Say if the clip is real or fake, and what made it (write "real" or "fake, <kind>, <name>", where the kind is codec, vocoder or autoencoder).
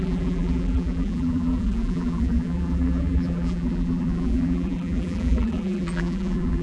fake, vocoder, BigVGAN v2